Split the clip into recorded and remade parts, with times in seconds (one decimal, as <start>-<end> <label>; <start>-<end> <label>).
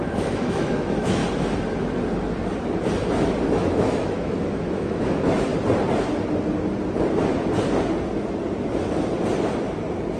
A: 0.0-1.2 remade; 1.2-3.5 recorded; 3.5-5.5 remade; 5.5-10.2 recorded